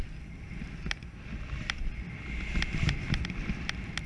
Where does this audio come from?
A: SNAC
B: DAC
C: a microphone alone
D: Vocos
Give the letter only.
C